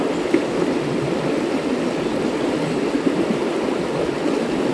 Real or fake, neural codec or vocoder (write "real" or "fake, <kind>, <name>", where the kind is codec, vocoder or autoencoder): real